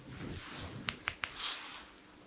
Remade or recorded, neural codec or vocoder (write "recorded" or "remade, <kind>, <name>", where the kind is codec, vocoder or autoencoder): recorded